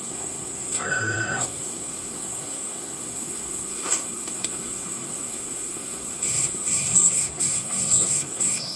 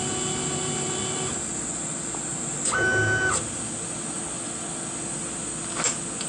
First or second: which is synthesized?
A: first